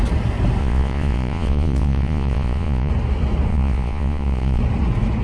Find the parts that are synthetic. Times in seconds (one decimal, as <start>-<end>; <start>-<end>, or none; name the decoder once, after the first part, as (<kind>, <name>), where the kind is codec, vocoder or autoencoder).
0.6-2.9 (vocoder, Vocos); 3.5-4.6